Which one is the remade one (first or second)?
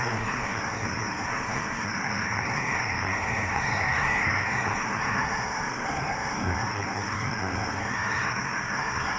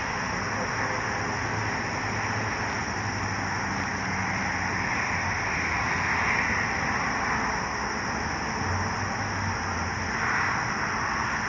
first